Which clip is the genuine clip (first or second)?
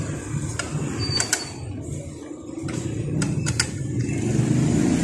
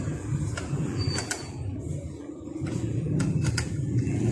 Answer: first